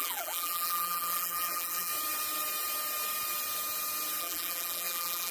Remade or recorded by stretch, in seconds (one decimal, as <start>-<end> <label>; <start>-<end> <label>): 0.0-1.9 remade; 1.9-4.2 recorded; 4.2-5.3 remade